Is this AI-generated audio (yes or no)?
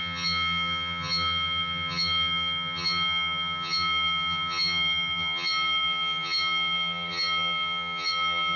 yes